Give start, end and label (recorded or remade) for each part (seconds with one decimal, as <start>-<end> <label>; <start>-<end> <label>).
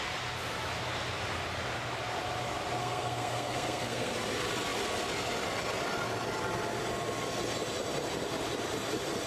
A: 0.0-2.8 recorded; 2.8-4.1 remade; 4.1-9.3 recorded